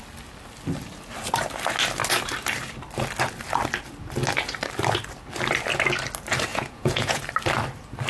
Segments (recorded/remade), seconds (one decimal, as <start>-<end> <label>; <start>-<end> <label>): 0.0-6.5 recorded; 6.5-7.2 remade; 7.2-8.1 recorded